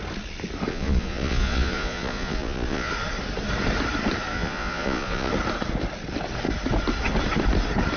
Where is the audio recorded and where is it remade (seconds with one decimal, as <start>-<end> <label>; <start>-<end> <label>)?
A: 0.0-0.7 recorded; 0.7-2.9 remade; 2.9-4.3 recorded; 4.3-5.3 remade; 5.3-8.0 recorded